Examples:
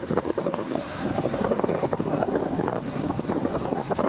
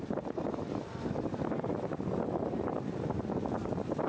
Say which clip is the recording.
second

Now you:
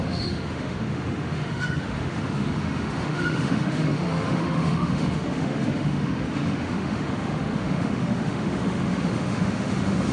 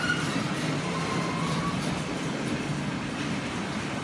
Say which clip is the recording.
second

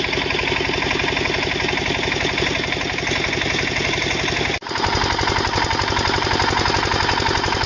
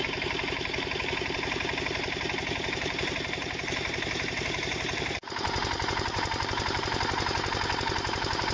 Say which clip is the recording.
first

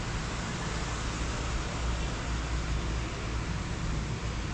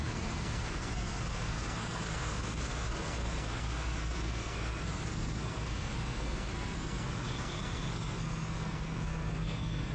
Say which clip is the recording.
first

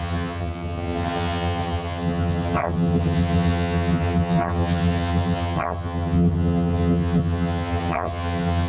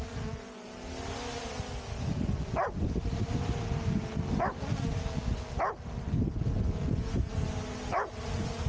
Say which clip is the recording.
second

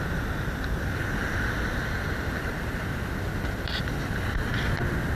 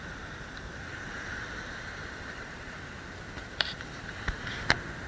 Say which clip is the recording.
first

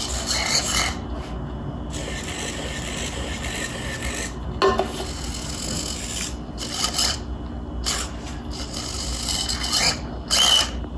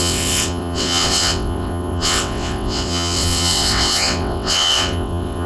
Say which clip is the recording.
first